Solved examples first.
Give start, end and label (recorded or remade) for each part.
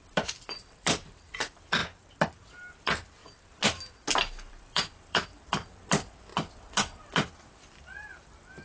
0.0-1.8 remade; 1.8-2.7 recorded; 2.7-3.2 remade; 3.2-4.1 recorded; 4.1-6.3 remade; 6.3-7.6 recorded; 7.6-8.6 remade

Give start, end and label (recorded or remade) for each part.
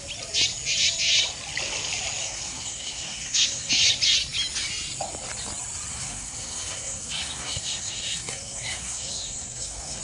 0.0-2.2 recorded; 2.2-3.7 remade; 3.7-5.9 recorded; 5.9-10.0 remade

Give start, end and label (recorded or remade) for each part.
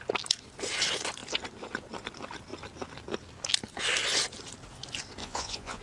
0.0-5.2 recorded; 5.2-5.8 remade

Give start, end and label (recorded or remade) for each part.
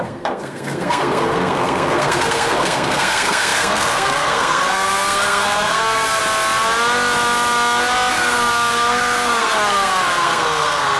0.0-6.2 remade; 6.2-8.1 recorded; 8.1-11.0 remade